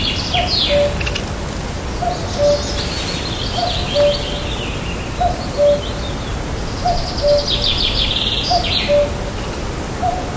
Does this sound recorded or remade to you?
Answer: recorded